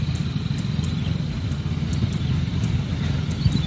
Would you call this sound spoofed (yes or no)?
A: no